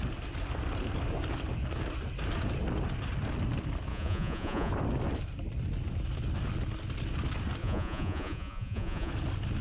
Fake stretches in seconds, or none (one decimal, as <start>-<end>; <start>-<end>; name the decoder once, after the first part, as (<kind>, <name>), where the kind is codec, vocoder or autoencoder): 3.9-4.7 (vocoder, Vocos); 7.6-9.1